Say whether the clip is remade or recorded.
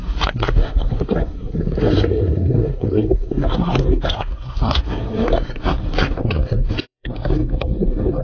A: remade